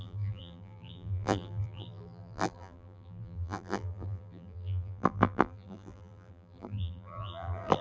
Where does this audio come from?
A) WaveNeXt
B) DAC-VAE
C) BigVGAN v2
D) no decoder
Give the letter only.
C